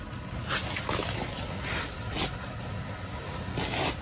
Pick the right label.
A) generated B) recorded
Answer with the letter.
B